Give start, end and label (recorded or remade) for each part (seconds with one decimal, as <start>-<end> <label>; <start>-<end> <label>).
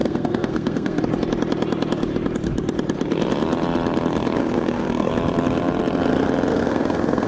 0.0-1.0 remade; 1.0-4.4 recorded; 4.4-5.1 remade; 5.1-6.5 recorded; 6.5-7.3 remade